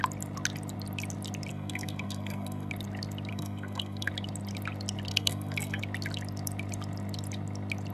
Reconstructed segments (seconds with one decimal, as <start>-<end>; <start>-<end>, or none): 1.5-2.7; 3.3-4.1; 5.1-5.8